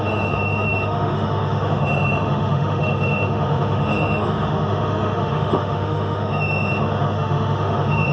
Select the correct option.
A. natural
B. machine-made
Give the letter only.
B